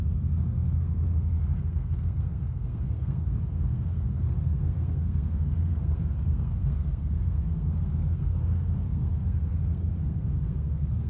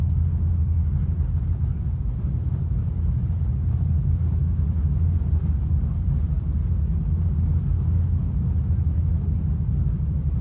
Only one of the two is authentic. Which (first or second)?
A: second